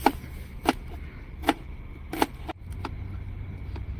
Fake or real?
real